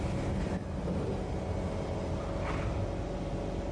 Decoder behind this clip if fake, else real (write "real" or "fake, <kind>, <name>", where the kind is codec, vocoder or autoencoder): real